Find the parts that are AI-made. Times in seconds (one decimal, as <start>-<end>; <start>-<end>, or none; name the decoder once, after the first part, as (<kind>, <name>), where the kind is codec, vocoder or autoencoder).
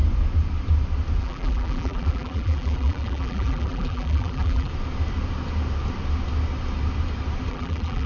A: 1.2-4.7 (vocoder, BigVGAN v2); 7.5-8.1